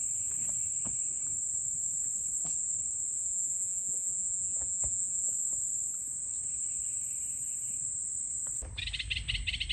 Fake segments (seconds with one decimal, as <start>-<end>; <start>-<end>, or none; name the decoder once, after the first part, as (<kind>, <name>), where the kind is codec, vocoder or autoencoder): 3.2-5.3 (vocoder, Vocos)